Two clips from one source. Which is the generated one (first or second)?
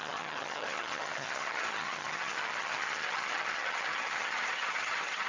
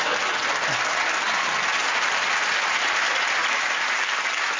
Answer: first